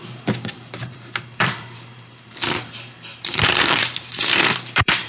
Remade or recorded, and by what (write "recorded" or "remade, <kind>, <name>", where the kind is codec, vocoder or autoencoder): remade, vocoder, BigVGAN v2